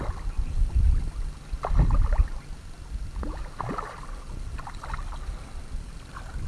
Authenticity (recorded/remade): recorded